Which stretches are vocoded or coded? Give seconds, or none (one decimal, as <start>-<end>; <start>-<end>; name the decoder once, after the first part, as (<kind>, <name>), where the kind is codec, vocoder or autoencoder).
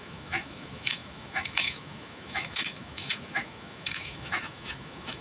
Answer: 0.0-5.2 (autoencoder, DAC-VAE)